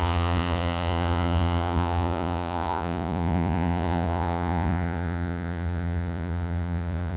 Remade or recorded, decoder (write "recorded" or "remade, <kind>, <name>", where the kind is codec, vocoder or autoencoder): remade, vocoder, Vocos